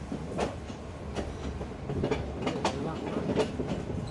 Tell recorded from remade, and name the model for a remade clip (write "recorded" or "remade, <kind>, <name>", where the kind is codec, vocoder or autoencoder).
recorded